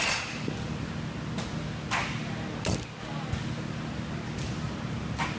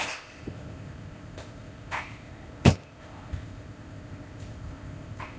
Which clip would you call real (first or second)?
first